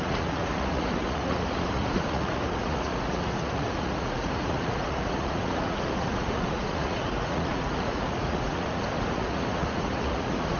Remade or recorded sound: remade